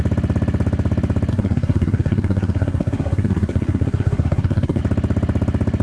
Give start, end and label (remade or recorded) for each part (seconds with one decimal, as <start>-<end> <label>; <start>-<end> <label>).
0.0-1.3 recorded; 1.3-4.8 remade; 4.8-5.8 recorded